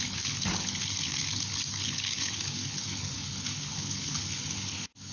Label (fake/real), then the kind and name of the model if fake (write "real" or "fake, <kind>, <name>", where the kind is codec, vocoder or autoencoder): fake, codec, HILCodec